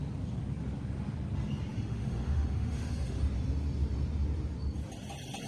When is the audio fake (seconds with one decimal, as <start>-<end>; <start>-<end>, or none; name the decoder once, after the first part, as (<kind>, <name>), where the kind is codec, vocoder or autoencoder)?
1.7-3.2 (autoencoder, DAC-VAE)